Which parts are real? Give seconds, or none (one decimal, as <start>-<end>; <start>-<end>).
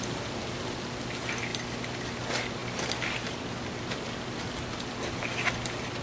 0.0-6.0